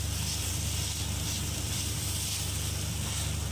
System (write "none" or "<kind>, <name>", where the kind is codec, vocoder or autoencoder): vocoder, BigVGAN v2